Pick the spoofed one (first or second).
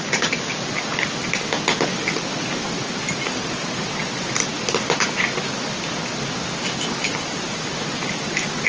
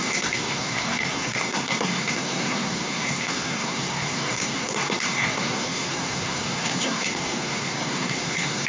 second